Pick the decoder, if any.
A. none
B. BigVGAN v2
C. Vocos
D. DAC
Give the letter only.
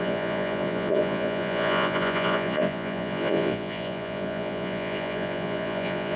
C